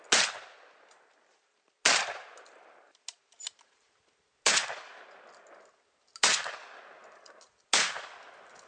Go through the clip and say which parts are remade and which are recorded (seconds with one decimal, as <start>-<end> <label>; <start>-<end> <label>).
0.0-8.7 recorded